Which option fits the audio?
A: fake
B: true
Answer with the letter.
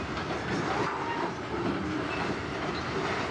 B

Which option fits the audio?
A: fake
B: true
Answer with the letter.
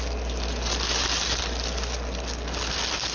B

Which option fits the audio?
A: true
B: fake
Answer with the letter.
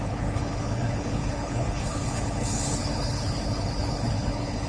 B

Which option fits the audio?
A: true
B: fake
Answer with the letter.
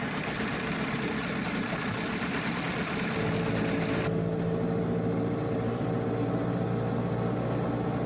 A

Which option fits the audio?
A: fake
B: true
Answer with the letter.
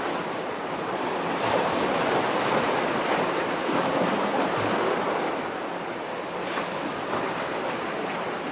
B